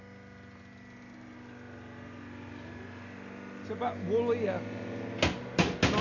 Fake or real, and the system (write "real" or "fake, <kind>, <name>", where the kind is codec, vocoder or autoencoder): real